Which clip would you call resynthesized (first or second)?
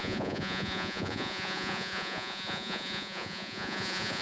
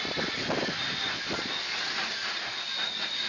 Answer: first